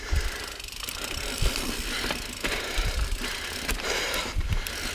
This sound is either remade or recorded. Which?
remade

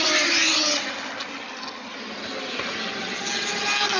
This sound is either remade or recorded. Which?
recorded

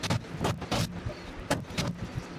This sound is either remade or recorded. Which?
recorded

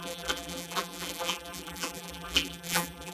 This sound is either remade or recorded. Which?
remade